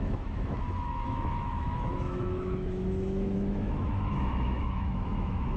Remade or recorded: remade